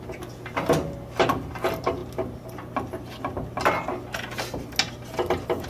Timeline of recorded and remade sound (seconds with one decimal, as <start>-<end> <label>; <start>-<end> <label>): 0.0-5.7 recorded